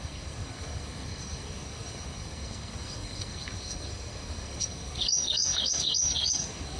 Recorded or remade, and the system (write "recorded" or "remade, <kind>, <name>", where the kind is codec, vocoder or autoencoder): remade, codec, SNAC